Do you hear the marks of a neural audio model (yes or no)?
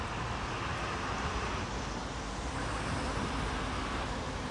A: no